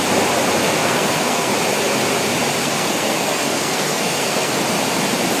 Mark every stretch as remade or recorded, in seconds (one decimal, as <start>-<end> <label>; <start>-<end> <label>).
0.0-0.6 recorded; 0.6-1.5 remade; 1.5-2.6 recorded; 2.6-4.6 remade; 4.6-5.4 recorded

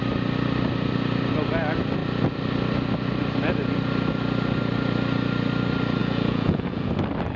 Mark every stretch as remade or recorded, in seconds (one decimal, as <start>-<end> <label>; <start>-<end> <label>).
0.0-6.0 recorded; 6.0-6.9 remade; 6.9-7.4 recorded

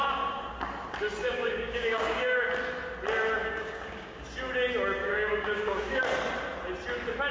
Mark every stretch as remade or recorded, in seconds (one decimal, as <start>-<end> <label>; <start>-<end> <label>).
0.0-1.2 recorded; 1.2-2.5 remade; 2.5-3.4 recorded; 3.4-4.2 remade; 4.2-5.0 recorded; 5.0-6.0 remade; 6.0-7.3 recorded

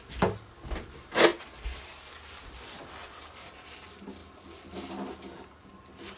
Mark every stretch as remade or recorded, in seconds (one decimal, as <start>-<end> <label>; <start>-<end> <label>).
0.0-6.2 recorded